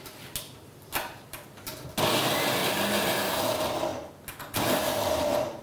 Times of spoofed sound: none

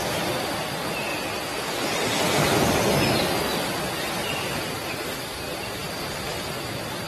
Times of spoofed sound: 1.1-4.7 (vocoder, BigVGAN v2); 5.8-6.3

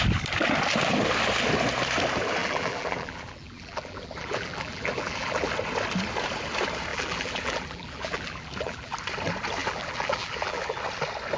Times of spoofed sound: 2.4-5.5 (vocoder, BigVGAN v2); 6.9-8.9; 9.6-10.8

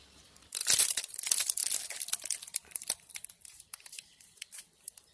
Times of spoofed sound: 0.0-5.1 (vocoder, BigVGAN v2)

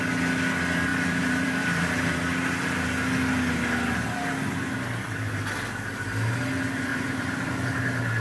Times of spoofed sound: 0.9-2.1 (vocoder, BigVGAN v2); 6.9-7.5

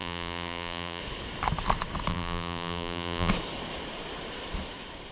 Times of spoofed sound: 0.0-1.0 (vocoder, BigVGAN v2); 2.1-3.3

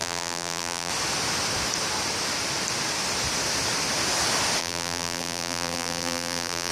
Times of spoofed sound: 0.0-0.9 (vocoder, BigVGAN v2); 4.6-6.7